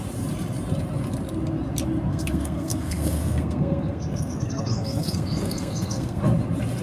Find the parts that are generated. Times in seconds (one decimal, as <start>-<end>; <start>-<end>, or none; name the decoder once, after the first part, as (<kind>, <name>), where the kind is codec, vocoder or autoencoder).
2.1-6.2 (codec, SNAC)